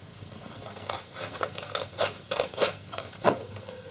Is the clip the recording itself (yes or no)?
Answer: no